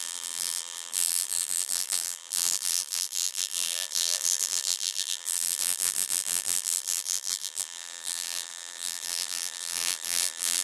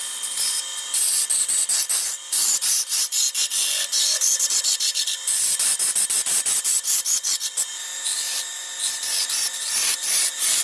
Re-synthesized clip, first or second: first